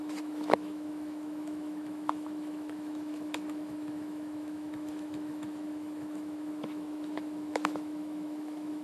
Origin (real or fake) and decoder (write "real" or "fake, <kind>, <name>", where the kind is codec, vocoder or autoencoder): fake, autoencoder, DAC-VAE